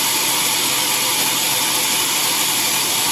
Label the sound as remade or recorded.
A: remade